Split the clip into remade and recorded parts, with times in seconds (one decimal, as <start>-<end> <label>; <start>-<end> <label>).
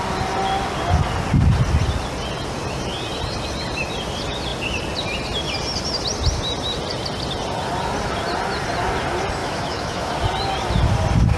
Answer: 0.0-9.4 recorded; 9.4-10.1 remade; 10.1-11.4 recorded